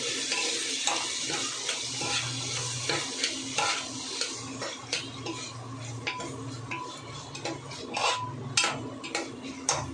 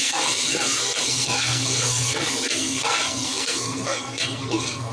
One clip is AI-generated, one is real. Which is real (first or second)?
first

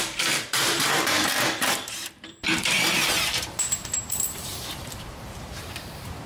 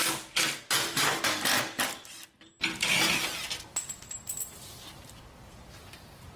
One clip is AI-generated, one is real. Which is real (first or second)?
second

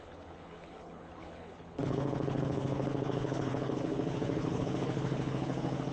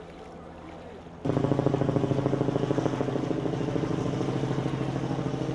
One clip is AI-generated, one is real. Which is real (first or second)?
second